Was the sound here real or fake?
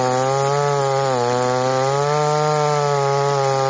real